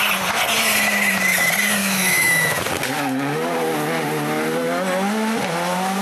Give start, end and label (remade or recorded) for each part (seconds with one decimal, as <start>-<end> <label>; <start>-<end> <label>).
0.0-1.8 recorded; 1.8-2.6 remade; 2.6-6.0 recorded